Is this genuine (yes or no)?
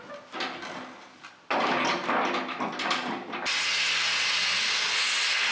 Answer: yes